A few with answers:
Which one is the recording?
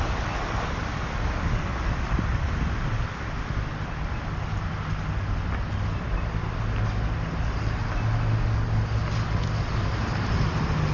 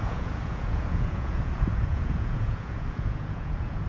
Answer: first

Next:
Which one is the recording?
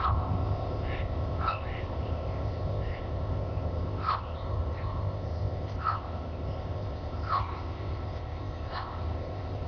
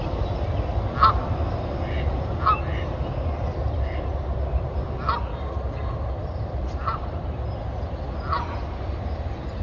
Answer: second